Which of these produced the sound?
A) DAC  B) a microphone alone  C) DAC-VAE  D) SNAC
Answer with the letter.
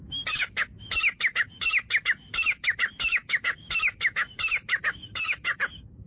C